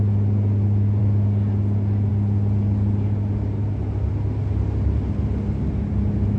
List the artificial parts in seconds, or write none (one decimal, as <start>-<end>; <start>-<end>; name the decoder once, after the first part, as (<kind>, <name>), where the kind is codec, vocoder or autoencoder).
none